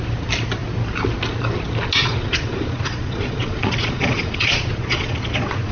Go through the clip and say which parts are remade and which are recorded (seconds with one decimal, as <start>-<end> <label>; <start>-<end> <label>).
0.0-2.0 recorded; 2.0-5.7 remade